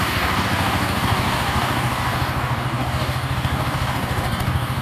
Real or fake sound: fake